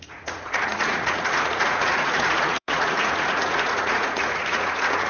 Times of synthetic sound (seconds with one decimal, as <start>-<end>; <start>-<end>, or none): 0.0-5.1